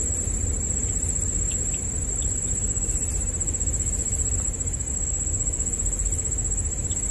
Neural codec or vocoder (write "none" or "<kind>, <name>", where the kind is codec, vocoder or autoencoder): none